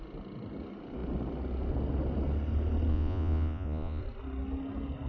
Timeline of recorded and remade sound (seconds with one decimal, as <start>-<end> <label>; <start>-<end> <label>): 0.0-2.9 recorded; 2.9-4.0 remade; 4.0-5.1 recorded